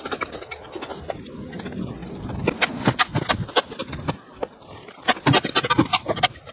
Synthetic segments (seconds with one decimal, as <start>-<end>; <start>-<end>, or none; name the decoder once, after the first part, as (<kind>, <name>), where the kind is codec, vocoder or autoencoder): none